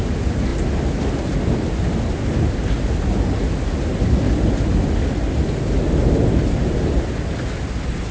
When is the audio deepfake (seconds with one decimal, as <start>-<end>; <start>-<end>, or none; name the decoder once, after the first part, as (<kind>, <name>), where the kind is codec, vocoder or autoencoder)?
none